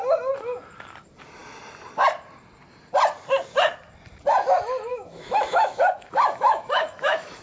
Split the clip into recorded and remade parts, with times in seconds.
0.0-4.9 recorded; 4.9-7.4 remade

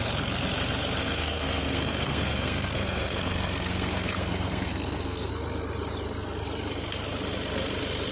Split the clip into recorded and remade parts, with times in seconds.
0.0-1.0 recorded; 1.0-5.3 remade; 5.3-8.1 recorded

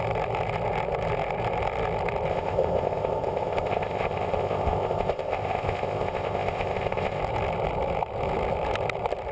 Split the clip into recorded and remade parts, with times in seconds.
0.0-2.3 recorded; 2.3-7.2 remade; 7.2-9.3 recorded

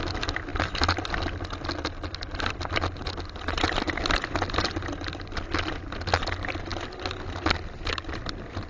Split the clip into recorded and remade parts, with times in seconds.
0.0-8.7 recorded

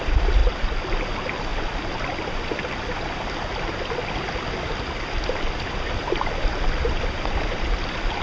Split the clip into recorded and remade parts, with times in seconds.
0.0-8.2 recorded

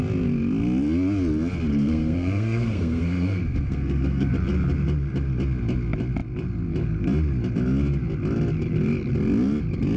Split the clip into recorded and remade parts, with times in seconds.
0.0-1.7 recorded; 1.7-4.3 remade; 4.3-10.0 recorded

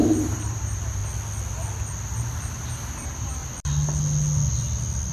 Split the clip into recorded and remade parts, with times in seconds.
0.0-1.0 remade; 1.0-2.4 recorded; 2.4-3.4 remade; 3.4-5.1 recorded